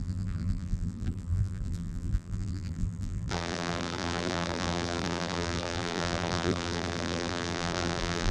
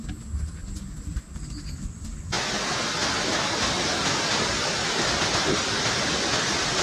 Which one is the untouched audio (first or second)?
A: second